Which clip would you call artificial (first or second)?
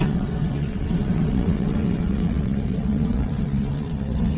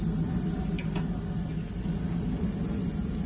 first